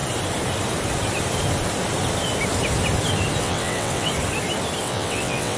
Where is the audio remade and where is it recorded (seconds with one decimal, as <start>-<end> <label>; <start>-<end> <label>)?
0.0-3.4 recorded; 3.4-4.1 remade; 4.1-4.8 recorded; 4.8-5.6 remade